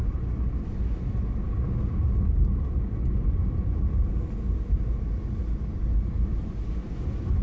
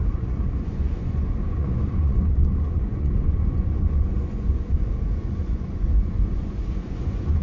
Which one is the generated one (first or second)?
second